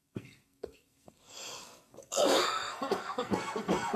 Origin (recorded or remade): remade